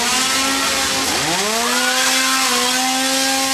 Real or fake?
real